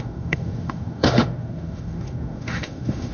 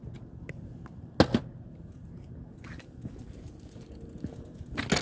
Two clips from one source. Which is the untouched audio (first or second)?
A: second